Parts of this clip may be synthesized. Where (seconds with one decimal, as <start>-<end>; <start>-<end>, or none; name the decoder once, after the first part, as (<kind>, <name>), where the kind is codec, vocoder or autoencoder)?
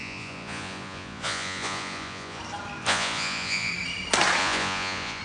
0.0-2.4 (vocoder, Vocos); 2.8-3.7; 4.4-5.2